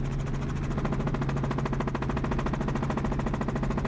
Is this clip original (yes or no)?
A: yes